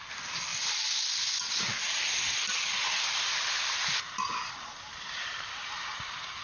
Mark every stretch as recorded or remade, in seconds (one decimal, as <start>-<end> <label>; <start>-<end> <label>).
0.0-6.4 recorded